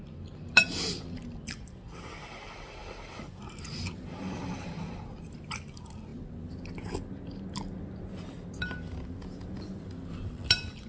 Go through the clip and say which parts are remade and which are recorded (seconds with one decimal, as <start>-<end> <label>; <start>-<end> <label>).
0.0-10.9 recorded